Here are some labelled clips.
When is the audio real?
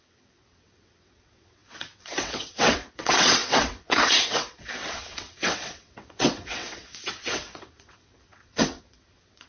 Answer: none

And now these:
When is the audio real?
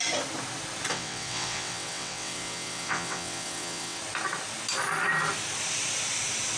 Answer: 0.0-0.9; 4.0-6.6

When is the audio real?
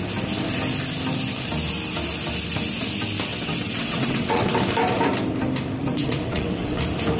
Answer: 0.0-3.3; 4.5-5.8; 6.8-7.2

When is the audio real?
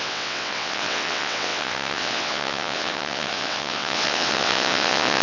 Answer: none